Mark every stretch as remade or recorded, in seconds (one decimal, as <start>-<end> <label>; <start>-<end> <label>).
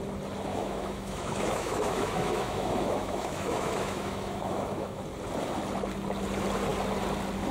0.0-0.5 recorded; 0.5-5.0 remade; 5.0-7.5 recorded